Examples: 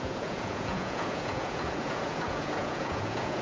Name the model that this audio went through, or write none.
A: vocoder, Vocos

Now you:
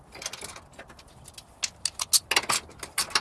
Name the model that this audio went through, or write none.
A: none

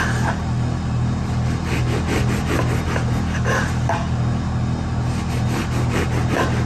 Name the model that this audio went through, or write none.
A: none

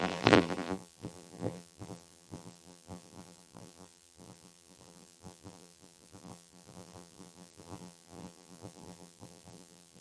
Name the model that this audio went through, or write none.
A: vocoder, BigVGAN v2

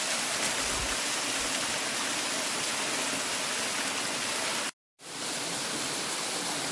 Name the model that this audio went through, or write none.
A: none